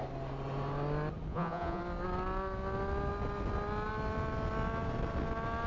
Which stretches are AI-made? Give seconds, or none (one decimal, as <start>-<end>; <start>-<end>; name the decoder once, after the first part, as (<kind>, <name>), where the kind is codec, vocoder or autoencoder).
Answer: 1.3-1.8 (vocoder, Vocos)